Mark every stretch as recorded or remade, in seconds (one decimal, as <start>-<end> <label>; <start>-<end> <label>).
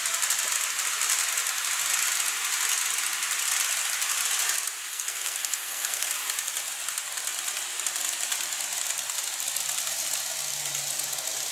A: 0.0-4.9 recorded; 4.9-6.1 remade; 6.1-11.5 recorded